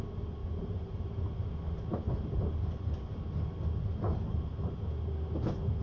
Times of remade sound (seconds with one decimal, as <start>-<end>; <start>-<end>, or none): 0.4-1.2